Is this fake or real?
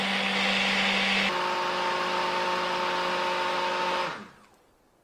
real